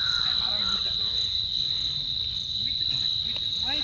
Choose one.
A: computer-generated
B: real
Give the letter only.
B